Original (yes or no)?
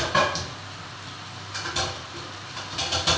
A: yes